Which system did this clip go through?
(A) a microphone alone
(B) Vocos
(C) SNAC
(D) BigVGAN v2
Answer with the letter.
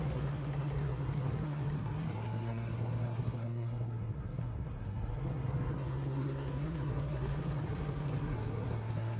C